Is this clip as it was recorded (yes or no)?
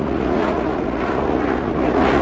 no